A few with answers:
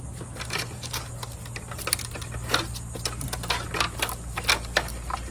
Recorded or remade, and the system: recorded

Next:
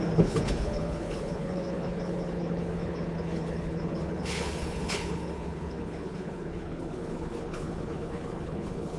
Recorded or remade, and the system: remade, codec, HILCodec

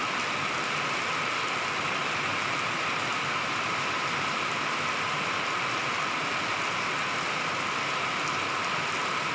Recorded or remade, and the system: recorded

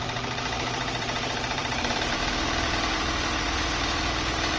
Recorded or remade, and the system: remade, vocoder, BigVGAN v2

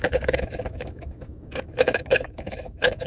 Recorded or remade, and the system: remade, autoencoder, DAC-VAE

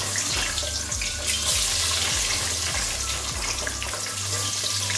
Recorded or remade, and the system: recorded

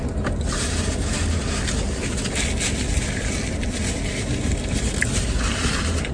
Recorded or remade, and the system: recorded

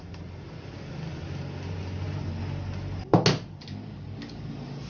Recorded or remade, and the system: recorded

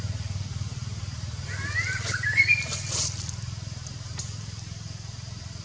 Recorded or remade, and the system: remade, vocoder, BigVGAN v2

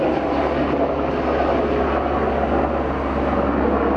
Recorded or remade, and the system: recorded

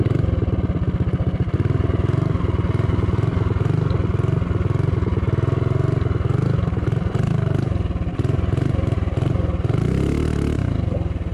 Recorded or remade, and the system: recorded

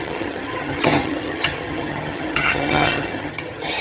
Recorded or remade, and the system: remade, vocoder, HiFi-GAN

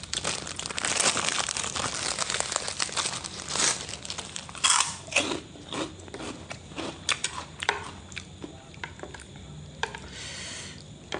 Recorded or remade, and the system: remade, vocoder, BigVGAN v2